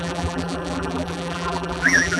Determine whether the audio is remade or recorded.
remade